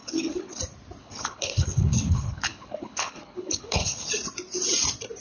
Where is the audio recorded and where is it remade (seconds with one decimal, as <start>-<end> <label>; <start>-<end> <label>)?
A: 0.0-0.6 remade; 0.6-1.0 recorded; 1.0-4.1 remade; 4.1-5.2 recorded